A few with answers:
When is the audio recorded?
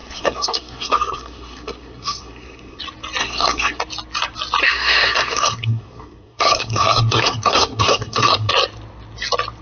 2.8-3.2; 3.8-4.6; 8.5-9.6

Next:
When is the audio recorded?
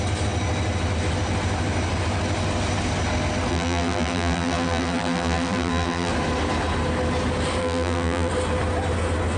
0.0-3.5; 6.1-7.6; 8.3-9.4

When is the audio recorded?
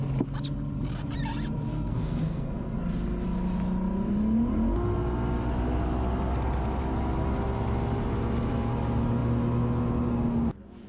0.0-1.7; 2.8-10.9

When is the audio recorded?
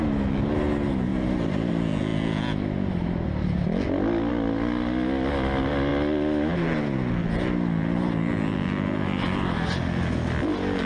0.0-10.9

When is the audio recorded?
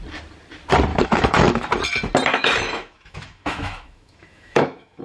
0.0-0.9; 1.7-2.3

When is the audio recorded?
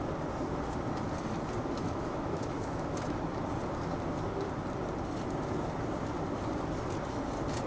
0.0-1.8; 3.2-7.7